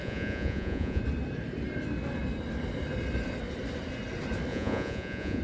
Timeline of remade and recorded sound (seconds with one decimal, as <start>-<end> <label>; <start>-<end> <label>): 0.0-1.0 remade; 1.0-4.5 recorded; 4.5-5.4 remade